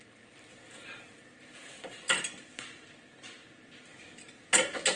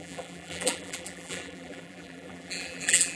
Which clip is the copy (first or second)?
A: second